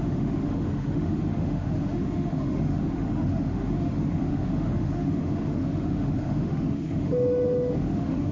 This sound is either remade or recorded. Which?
remade